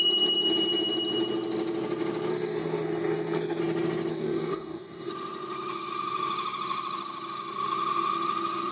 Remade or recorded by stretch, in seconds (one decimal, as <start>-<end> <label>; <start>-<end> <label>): 0.0-2.3 recorded; 2.3-3.6 remade; 3.6-4.1 recorded; 4.1-5.1 remade; 5.1-8.7 recorded